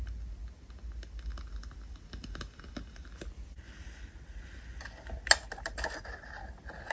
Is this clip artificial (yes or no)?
no